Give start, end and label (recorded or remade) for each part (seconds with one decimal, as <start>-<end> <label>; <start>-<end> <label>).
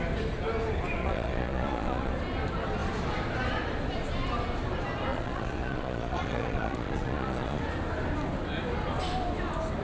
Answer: 0.0-1.0 recorded; 1.0-2.1 remade; 2.1-5.1 recorded; 5.1-7.6 remade; 7.6-9.8 recorded